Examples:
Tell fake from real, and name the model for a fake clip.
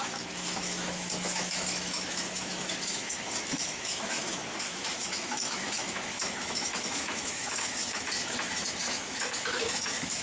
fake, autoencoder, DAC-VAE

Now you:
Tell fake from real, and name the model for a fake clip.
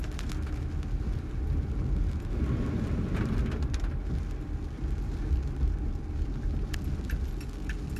real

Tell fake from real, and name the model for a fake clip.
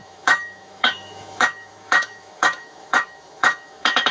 fake, autoencoder, DAC-VAE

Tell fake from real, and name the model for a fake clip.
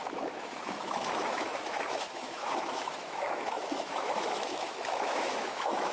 fake, autoencoder, DAC-VAE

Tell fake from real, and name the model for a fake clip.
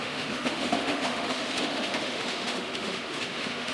fake, autoencoder, DAC-VAE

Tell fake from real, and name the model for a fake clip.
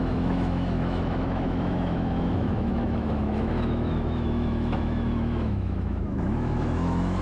fake, autoencoder, DAC-VAE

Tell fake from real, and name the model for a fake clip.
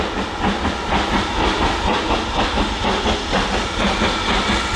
real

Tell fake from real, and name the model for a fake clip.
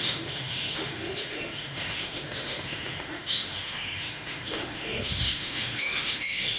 fake, autoencoder, DAC-VAE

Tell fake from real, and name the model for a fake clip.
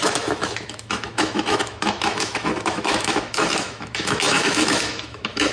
fake, autoencoder, DAC-VAE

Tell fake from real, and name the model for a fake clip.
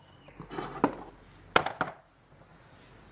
real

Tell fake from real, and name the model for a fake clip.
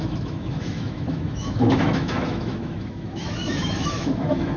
fake, autoencoder, DAC-VAE